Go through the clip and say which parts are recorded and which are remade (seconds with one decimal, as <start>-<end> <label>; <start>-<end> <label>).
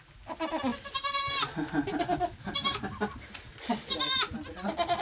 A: 0.0-5.0 recorded